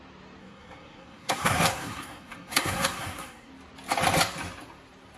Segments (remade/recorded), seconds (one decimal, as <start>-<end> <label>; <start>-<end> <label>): 0.0-0.4 recorded; 0.4-3.5 remade; 3.5-5.2 recorded

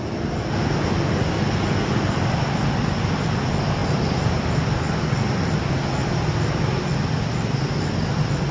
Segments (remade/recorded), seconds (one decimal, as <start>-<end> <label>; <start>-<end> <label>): 0.0-8.5 recorded

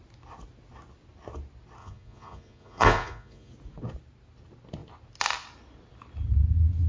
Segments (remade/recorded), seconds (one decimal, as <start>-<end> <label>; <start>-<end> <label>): 0.0-1.8 recorded; 1.8-3.5 remade; 3.5-6.9 recorded

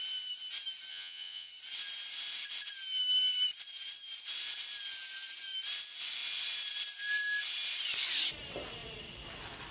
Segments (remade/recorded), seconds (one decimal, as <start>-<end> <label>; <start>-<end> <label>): 0.0-0.9 recorded; 0.9-1.5 remade; 1.5-9.7 recorded

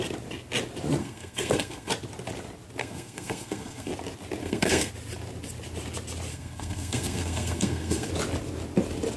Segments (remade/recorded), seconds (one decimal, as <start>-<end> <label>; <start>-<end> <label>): 0.0-1.0 recorded; 1.0-1.9 remade; 1.9-2.8 recorded; 2.8-3.9 remade; 3.9-4.4 recorded; 4.4-4.9 remade; 4.9-6.3 recorded; 6.3-8.1 remade; 8.1-9.2 recorded